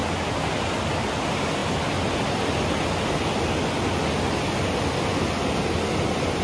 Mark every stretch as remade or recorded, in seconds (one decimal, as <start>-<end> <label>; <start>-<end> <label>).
0.0-6.4 recorded